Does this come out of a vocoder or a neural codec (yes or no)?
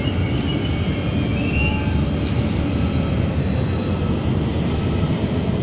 no